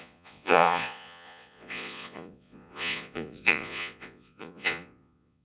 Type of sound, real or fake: fake